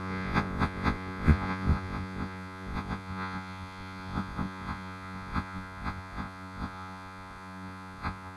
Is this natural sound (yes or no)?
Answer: no